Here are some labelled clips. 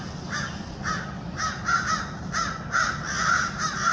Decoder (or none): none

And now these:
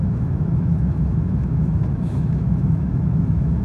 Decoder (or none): autoencoder, DAC-VAE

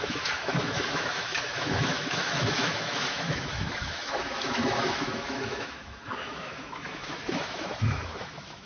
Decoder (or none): autoencoder, DAC-VAE